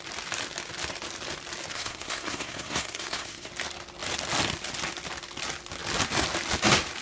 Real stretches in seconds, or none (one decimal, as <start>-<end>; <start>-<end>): 0.0-1.7; 3.5-7.0